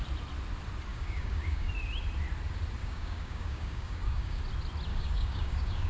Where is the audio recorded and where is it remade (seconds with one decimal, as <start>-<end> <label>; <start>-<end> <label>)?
0.0-0.9 recorded; 0.9-1.7 remade; 1.7-2.8 recorded; 2.8-4.4 remade; 4.4-4.9 recorded; 4.9-5.9 remade